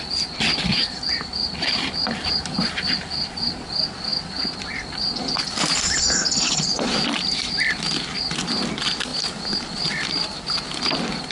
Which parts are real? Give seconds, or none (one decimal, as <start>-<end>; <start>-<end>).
0.0-0.7; 3.4-11.3